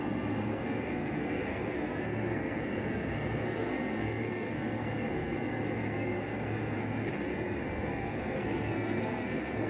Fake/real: fake